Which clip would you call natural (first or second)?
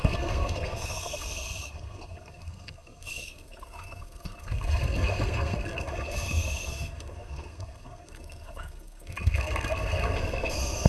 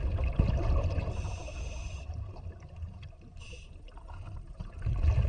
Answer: second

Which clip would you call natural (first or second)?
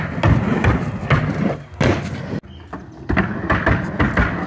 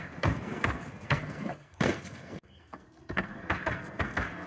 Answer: first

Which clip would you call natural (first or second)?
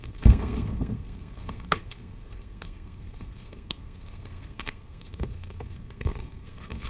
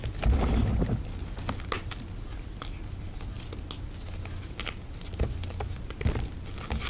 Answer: second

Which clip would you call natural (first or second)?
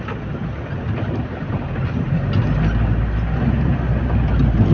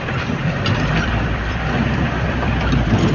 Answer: first